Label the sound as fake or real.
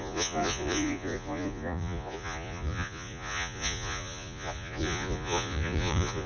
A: fake